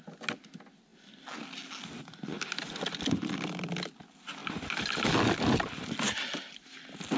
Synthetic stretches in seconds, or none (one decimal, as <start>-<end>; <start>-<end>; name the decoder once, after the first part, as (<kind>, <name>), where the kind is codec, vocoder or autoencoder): none